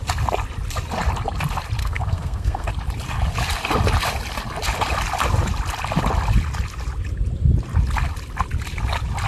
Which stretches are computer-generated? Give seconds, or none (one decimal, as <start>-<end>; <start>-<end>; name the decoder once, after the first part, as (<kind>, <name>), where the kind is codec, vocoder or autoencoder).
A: 1.8-2.7 (codec, SNAC)